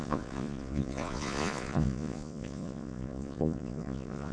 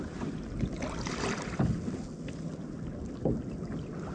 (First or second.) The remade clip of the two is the first